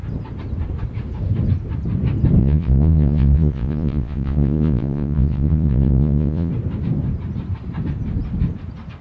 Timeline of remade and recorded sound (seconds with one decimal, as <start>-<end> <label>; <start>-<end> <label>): 0.0-2.4 recorded; 2.4-6.5 remade; 6.5-9.0 recorded